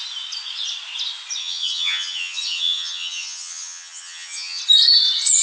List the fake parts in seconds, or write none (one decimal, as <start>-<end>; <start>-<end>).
1.4-4.6